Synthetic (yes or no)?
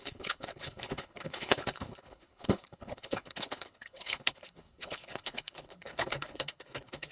yes